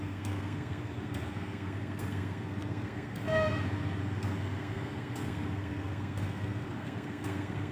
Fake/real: fake